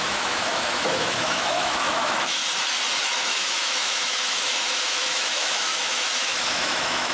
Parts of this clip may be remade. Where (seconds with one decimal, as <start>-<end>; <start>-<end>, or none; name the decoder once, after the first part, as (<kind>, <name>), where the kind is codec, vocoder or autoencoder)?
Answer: 0.0-2.4 (autoencoder, DAC-VAE); 3.0-7.1